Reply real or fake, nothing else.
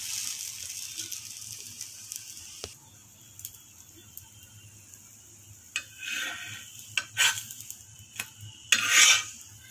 real